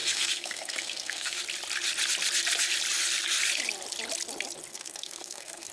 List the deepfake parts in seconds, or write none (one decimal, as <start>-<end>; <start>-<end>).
0.0-1.4; 4.7-5.7